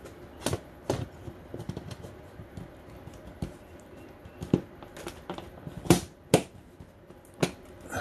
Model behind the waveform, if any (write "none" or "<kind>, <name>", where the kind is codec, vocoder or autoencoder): none